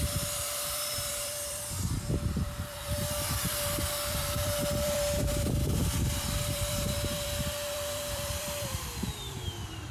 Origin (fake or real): fake